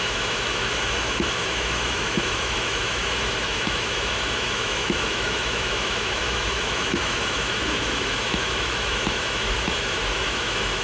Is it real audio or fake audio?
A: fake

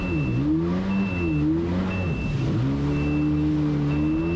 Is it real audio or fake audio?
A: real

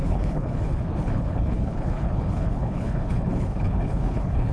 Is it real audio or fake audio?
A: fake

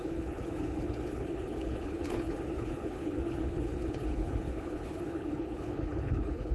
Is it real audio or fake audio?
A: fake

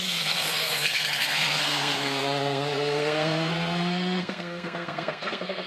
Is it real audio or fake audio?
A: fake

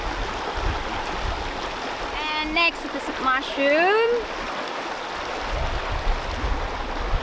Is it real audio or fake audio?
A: real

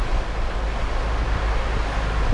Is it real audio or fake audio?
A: real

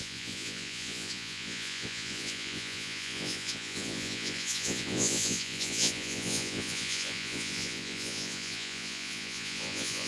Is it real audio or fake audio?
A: fake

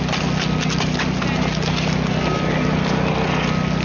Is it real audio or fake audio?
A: real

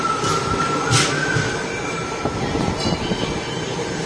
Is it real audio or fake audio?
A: real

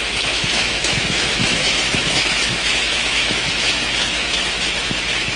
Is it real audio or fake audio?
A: fake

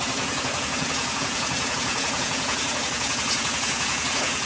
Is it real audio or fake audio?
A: fake